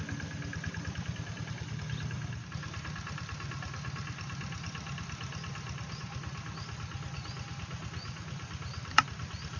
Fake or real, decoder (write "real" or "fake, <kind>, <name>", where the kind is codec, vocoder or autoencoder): real